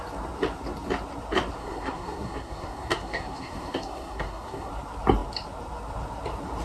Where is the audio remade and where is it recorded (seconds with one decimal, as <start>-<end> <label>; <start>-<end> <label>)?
0.0-1.6 recorded; 1.6-4.7 remade; 4.7-6.6 recorded

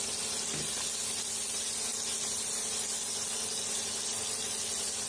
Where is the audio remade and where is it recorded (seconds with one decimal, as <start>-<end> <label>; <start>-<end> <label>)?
0.0-5.1 recorded

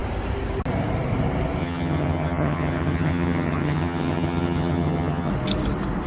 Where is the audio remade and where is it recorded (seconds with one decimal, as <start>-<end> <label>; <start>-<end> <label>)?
0.0-1.6 recorded; 1.6-5.3 remade; 5.3-6.1 recorded